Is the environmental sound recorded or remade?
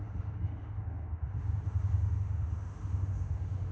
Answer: remade